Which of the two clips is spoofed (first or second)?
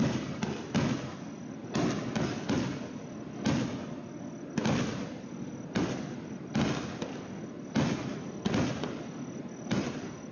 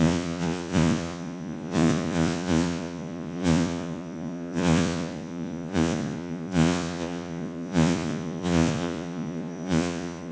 second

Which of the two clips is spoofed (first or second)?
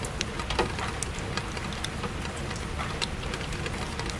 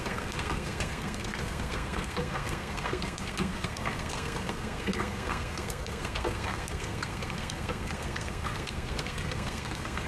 second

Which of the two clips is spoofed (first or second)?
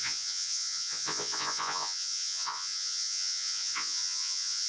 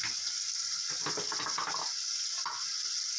first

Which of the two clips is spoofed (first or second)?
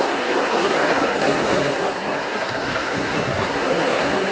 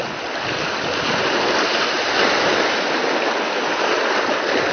first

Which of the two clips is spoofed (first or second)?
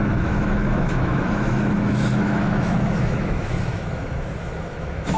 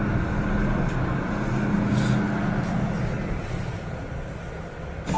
first